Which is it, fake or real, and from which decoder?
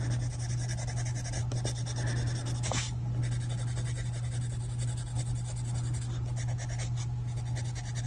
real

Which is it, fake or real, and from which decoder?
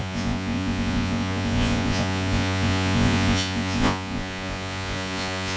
fake, vocoder, Vocos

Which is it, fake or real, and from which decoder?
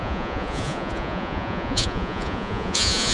fake, vocoder, Vocos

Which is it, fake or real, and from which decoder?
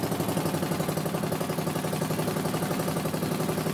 real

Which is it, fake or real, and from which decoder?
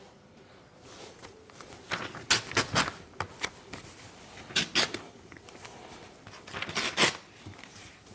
real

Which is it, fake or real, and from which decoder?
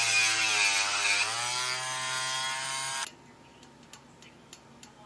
real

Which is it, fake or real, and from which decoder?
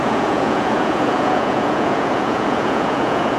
fake, vocoder, Vocos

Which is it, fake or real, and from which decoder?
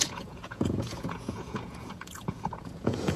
fake, vocoder, Vocos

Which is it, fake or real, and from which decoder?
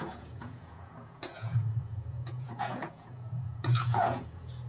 fake, vocoder, Vocos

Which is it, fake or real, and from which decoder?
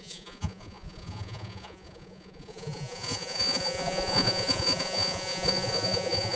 fake, vocoder, Vocos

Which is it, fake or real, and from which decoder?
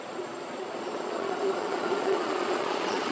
fake, vocoder, Vocos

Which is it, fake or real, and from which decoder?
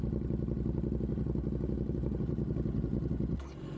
real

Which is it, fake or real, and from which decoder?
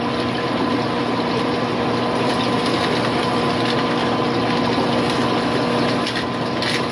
real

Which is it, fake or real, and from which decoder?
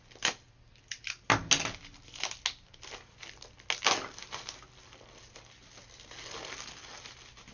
real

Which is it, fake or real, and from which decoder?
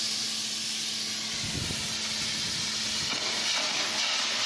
real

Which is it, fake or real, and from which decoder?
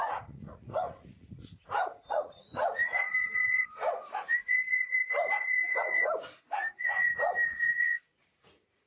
fake, vocoder, Vocos